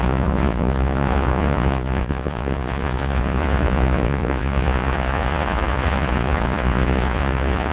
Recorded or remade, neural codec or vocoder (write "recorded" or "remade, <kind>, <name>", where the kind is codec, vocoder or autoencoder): remade, vocoder, Vocos